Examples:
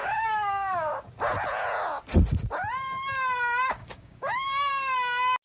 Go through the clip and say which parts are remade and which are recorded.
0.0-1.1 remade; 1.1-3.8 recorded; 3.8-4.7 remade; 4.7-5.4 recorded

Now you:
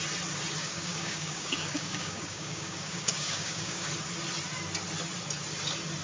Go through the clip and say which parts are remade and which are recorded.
0.0-0.6 recorded; 0.6-3.9 remade; 3.9-6.0 recorded

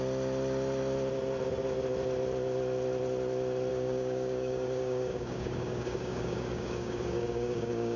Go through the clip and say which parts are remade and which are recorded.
0.0-3.7 recorded; 3.7-8.0 remade

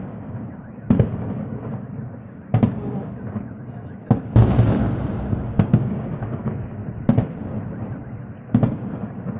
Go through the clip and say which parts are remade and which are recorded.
0.0-4.8 remade; 4.8-5.4 recorded; 5.4-6.8 remade; 6.8-8.3 recorded; 8.3-9.4 remade

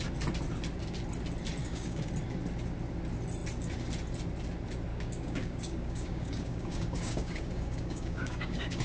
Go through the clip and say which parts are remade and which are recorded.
0.0-1.6 recorded; 1.6-2.1 remade; 2.1-4.9 recorded; 4.9-8.8 remade

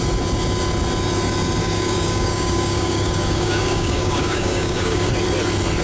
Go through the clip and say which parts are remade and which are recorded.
0.0-1.6 recorded; 1.6-5.1 remade; 5.1-5.8 recorded